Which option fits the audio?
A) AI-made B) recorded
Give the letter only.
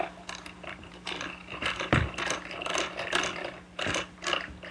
A